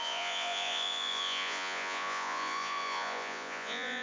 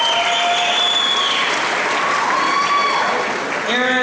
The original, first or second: second